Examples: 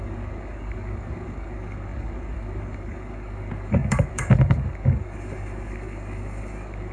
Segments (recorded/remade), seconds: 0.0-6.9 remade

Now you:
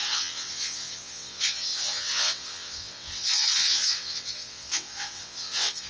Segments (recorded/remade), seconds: 0.0-5.9 remade

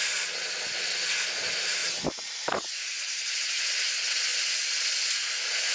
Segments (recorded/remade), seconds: 0.0-1.8 recorded; 1.8-3.7 remade; 3.7-5.7 recorded